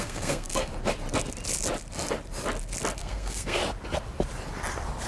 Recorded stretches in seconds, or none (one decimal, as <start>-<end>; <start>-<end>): 0.7-3.0; 3.6-5.1